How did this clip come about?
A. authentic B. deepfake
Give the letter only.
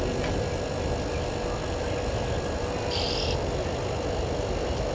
A